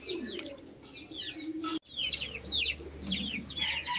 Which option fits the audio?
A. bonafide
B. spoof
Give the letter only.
A